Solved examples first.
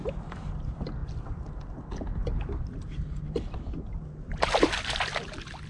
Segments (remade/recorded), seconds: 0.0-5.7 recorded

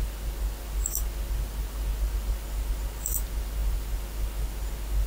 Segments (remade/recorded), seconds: 0.0-5.1 recorded

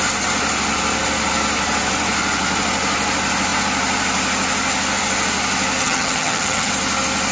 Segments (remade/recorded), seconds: 0.0-5.8 recorded; 5.8-6.7 remade; 6.7-7.3 recorded

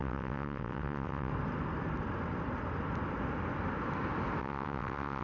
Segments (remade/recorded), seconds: 0.0-1.3 remade; 1.3-4.4 recorded; 4.4-5.2 remade

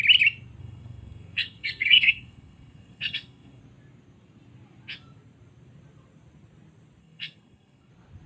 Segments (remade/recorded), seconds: 0.0-0.6 recorded; 0.6-3.6 remade; 3.6-7.0 recorded; 7.0-7.9 remade; 7.9-8.3 recorded

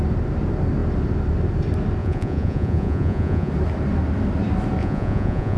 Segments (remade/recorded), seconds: 0.0-2.0 recorded; 2.0-3.5 remade; 3.5-4.8 recorded; 4.8-5.6 remade

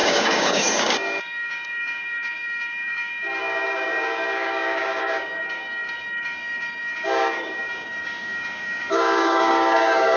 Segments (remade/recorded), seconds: 0.0-10.2 remade